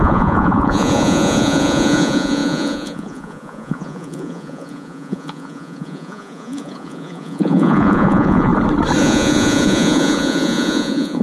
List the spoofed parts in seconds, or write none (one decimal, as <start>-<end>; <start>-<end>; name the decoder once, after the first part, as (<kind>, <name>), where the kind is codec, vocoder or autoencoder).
0.0-8.5 (vocoder, Vocos); 9.0-11.2